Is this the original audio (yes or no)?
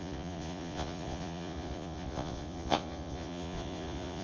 no